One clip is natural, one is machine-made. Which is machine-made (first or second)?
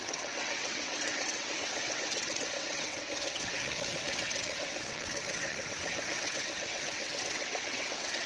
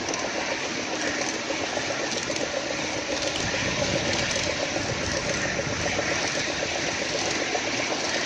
first